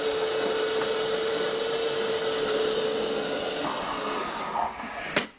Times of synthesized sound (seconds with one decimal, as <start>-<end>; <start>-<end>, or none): none